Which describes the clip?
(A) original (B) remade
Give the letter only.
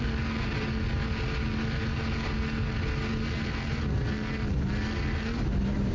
A